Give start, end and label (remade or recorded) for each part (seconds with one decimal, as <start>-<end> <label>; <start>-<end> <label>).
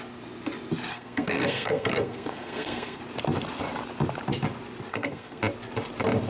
0.0-0.9 recorded; 0.9-3.0 remade; 3.0-4.9 recorded; 4.9-5.4 remade; 5.4-6.3 recorded